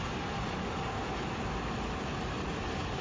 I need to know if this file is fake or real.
real